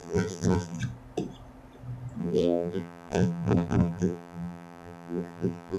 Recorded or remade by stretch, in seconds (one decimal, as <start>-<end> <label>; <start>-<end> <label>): 0.0-0.8 remade; 0.8-2.2 recorded; 2.2-5.8 remade